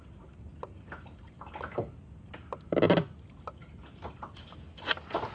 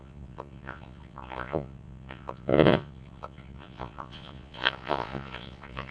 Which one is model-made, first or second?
second